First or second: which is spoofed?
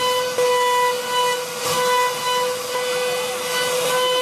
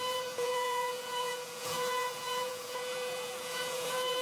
second